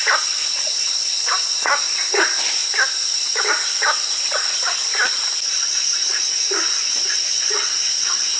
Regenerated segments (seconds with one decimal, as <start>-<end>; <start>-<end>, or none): none